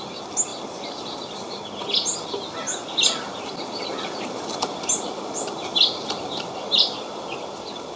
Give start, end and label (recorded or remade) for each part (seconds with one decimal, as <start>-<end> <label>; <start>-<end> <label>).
0.0-8.0 recorded